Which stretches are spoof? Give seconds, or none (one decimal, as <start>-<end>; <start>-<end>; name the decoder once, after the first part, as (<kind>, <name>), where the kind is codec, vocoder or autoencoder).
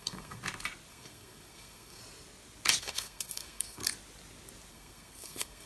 0.0-0.4 (codec, SNAC); 0.9-2.0; 2.8-3.8; 4.7-5.7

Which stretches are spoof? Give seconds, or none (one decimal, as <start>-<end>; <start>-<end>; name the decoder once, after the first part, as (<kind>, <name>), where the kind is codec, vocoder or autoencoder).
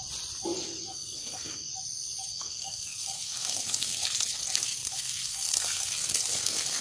0.9-1.7 (codec, SNAC); 2.3-6.8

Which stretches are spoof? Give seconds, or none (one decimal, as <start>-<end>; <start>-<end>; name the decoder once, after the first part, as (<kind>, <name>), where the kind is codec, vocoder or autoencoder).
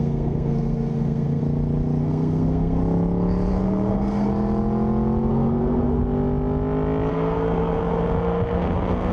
0.0-1.4 (codec, SNAC); 2.0-2.8; 3.5-4.3; 5.3-6.0; 7.1-9.1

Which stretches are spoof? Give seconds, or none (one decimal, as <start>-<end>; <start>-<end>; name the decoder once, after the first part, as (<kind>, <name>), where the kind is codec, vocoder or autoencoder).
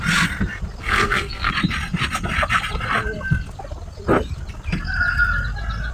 0.8-1.5 (codec, SNAC)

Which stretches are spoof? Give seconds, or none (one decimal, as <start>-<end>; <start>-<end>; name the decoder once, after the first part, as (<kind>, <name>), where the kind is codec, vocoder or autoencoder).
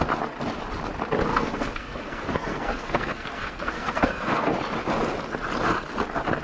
1.3-4.5 (codec, SNAC)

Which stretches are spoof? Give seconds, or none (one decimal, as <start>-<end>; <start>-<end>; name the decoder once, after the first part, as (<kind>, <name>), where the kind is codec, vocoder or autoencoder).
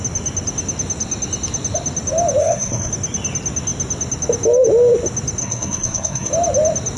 2.4-2.9 (codec, SNAC); 5.4-6.3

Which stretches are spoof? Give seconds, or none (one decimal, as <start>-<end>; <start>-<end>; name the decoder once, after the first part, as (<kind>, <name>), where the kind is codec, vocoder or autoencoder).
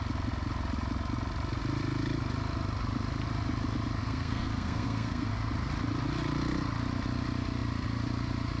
4.0-5.3 (codec, SNAC)